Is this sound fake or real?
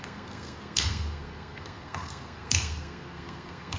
fake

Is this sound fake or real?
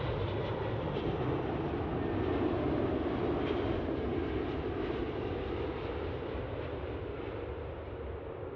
real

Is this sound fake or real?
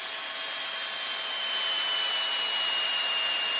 real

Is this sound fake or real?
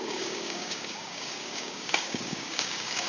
fake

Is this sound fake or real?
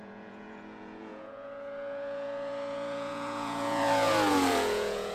fake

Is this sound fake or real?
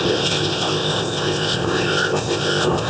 fake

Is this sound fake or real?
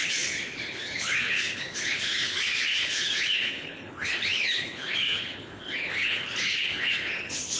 fake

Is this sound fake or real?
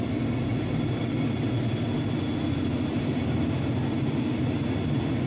real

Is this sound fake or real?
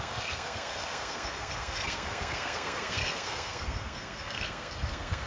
fake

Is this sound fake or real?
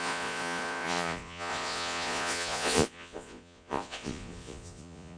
fake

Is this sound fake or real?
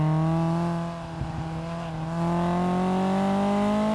real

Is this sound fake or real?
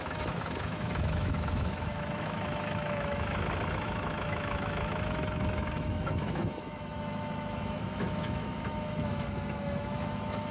fake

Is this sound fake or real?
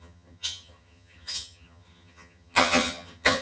fake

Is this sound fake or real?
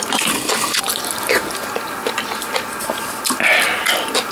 real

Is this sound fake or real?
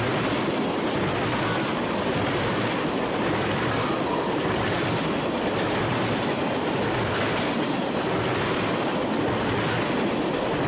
real